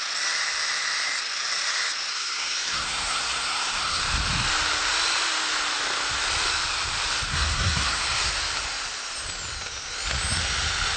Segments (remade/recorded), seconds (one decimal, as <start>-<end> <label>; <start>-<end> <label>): 0.0-2.1 recorded; 2.1-4.0 remade; 4.0-7.3 recorded; 7.3-8.0 remade; 8.0-11.0 recorded